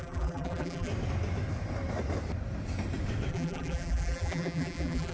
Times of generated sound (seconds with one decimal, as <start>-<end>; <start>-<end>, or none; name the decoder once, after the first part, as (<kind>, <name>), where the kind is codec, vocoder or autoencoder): 0.0-0.9 (vocoder, BigVGAN v2); 3.3-5.1